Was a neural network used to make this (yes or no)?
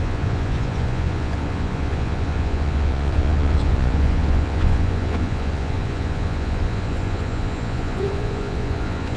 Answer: yes